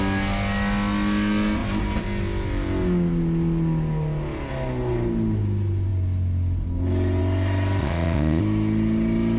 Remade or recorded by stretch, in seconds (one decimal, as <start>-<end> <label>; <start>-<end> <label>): 0.0-7.8 recorded; 7.8-8.4 remade; 8.4-9.4 recorded